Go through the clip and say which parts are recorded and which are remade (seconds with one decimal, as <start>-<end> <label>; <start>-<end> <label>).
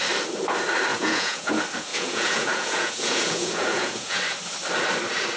0.0-0.9 recorded; 0.9-1.5 remade; 1.5-1.9 recorded; 1.9-4.2 remade; 4.2-5.4 recorded